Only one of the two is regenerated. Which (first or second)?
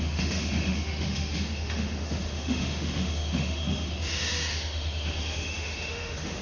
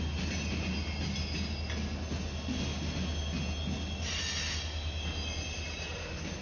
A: first